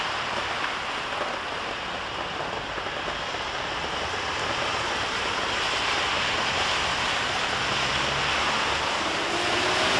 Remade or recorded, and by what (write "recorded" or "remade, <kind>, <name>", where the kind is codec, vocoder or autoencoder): recorded